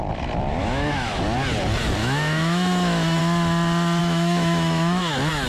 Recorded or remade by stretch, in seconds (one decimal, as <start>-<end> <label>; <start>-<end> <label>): 0.0-0.6 recorded; 0.6-1.2 remade; 1.2-2.0 recorded; 2.0-3.2 remade; 3.2-4.0 recorded; 4.0-5.1 remade; 5.1-5.5 recorded